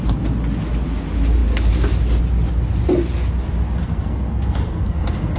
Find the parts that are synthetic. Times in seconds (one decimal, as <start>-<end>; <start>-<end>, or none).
3.8-5.4